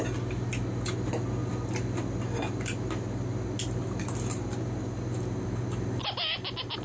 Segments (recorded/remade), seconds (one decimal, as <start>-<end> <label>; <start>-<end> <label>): 0.0-6.8 recorded